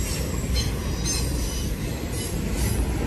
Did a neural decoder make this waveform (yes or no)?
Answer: no